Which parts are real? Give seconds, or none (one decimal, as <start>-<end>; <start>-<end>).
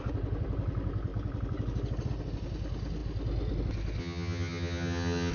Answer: 0.0-4.0